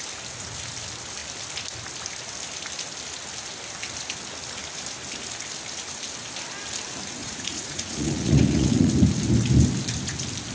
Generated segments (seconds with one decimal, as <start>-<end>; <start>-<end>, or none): 7.2-8.9